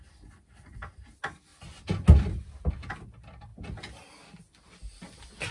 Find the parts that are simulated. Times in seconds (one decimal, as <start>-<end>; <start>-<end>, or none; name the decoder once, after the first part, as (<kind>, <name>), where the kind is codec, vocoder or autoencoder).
none